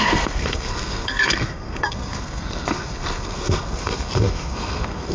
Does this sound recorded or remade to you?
remade